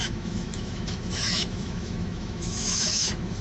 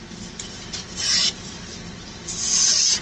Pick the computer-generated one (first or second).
first